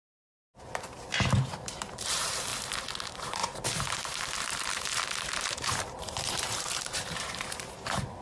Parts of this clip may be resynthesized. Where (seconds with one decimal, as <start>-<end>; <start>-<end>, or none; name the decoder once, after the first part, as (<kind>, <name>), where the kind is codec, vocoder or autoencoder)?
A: 0.0-0.4 (vocoder, BigVGAN v2); 1.5-2.5; 3.0-8.2